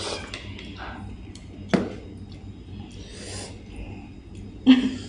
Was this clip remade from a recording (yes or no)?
no